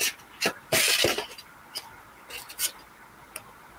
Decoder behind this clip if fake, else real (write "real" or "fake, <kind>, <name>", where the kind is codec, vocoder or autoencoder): fake, vocoder, BigVGAN v2